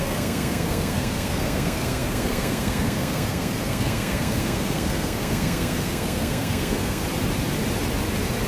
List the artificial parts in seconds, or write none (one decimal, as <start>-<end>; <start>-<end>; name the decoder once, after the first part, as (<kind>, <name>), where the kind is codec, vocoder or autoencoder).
0.0-7.0 (codec, SNAC)